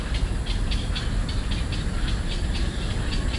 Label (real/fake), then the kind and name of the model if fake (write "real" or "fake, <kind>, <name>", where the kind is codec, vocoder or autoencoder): real